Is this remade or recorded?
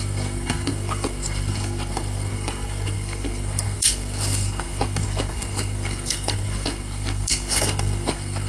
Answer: remade